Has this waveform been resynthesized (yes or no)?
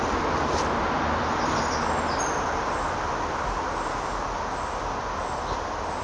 no